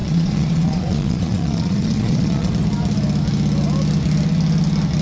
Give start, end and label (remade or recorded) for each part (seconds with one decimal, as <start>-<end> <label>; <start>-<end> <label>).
0.0-2.5 remade; 2.5-5.0 recorded